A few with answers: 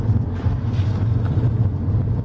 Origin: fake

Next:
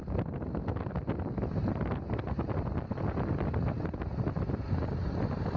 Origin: real